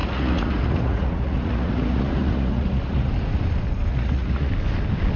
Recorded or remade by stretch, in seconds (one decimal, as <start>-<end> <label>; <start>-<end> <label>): 0.0-3.1 remade; 3.1-3.9 recorded; 3.9-4.5 remade; 4.5-5.2 recorded